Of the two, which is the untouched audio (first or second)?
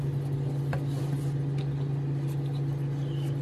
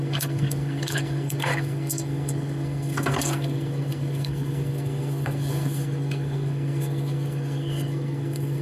first